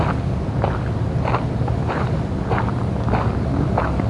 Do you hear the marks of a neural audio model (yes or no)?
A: no